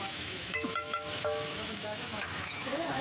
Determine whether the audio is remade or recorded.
remade